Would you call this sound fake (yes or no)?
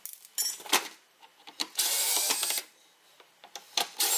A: no